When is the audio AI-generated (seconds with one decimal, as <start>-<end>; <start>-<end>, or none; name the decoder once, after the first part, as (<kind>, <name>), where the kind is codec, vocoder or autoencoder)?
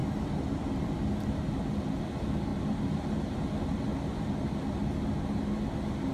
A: none